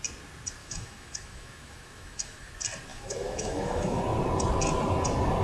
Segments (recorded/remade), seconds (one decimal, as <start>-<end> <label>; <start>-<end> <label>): 0.0-0.6 recorded; 0.6-2.5 remade; 2.5-2.9 recorded; 2.9-4.0 remade; 4.0-5.4 recorded